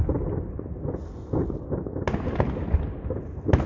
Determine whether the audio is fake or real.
real